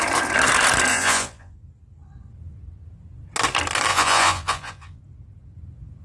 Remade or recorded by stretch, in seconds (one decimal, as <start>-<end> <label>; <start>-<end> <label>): 0.0-0.9 recorded; 0.9-1.6 remade; 1.6-3.9 recorded; 3.9-5.0 remade; 5.0-6.0 recorded